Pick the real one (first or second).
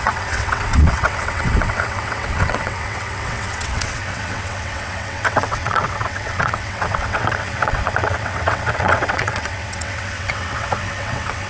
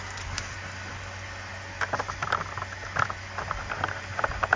second